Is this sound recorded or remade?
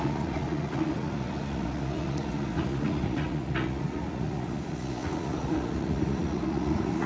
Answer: remade